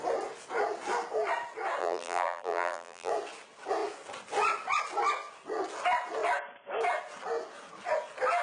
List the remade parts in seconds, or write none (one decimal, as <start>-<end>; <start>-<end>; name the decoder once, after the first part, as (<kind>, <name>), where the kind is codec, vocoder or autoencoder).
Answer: 1.8-3.1 (vocoder, BigVGAN v2)